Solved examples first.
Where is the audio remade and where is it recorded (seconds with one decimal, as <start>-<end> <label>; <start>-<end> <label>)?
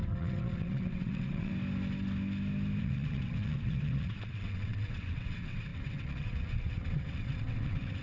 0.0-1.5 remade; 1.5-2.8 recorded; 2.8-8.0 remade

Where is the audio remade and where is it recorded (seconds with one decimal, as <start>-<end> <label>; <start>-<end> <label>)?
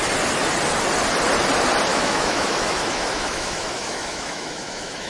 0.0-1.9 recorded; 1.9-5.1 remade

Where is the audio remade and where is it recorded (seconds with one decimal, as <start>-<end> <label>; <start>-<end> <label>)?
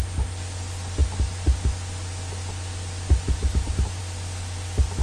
0.0-5.0 recorded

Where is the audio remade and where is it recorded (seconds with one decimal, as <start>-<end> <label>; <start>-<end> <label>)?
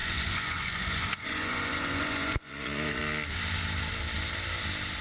0.0-3.0 remade; 3.0-5.0 recorded